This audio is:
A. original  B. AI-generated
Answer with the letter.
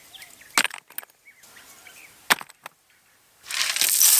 A